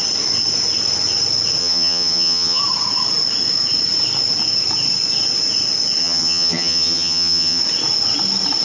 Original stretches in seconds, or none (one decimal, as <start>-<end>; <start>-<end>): 0.0-1.6; 2.6-6.0; 7.6-8.6